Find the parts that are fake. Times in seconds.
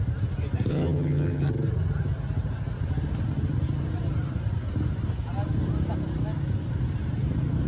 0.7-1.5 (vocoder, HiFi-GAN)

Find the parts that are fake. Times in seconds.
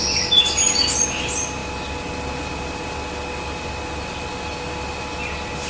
none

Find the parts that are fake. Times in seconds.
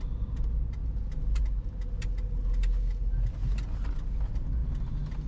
none